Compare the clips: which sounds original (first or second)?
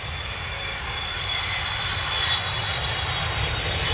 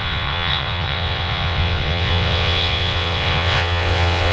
first